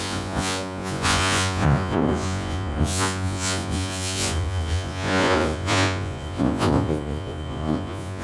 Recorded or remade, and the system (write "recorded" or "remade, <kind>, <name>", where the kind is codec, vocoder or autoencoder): remade, vocoder, Vocos